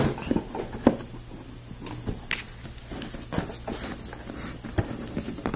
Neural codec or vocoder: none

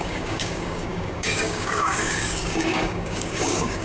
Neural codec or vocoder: codec, DAC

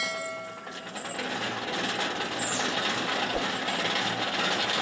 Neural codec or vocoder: none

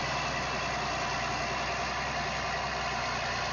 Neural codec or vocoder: none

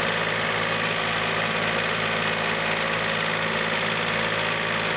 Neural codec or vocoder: none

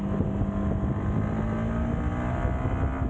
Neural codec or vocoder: none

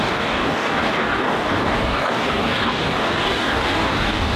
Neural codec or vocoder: codec, DAC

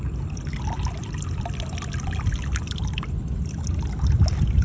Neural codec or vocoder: none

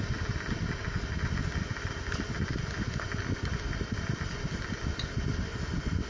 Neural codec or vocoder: none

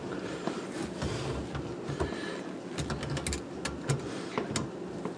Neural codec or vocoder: none